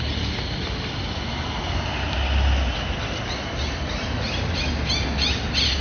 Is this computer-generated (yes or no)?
no